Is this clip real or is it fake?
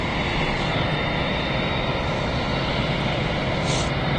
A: real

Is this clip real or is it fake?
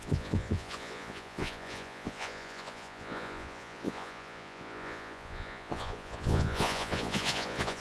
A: fake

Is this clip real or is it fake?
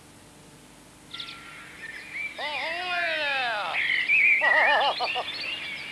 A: real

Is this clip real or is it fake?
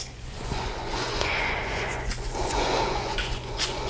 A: fake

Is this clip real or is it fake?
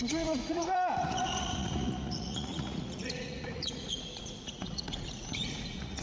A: fake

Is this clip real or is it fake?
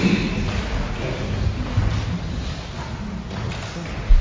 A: real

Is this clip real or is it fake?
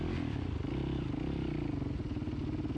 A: real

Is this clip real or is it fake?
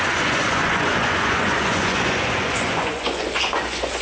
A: fake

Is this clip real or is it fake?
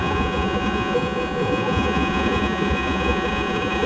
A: fake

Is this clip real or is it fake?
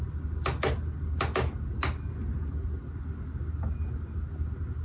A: real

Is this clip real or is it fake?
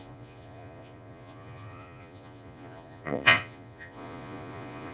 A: fake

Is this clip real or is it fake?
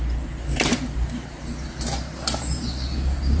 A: real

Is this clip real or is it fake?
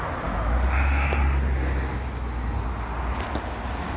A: real